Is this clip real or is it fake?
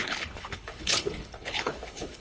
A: fake